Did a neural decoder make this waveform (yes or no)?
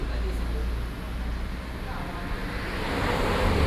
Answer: no